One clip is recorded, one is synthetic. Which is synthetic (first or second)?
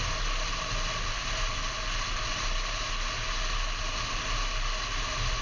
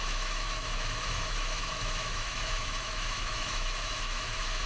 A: second